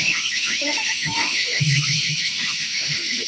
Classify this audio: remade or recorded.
remade